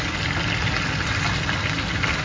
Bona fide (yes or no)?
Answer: yes